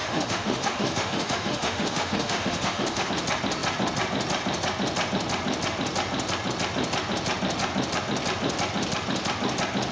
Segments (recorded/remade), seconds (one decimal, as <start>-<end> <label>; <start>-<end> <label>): 0.0-3.1 remade; 3.1-9.9 recorded